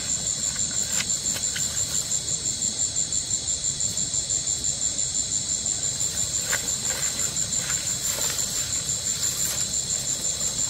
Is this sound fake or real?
real